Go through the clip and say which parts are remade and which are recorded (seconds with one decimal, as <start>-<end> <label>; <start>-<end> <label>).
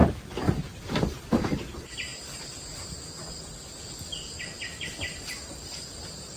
0.0-0.8 remade; 0.8-6.4 recorded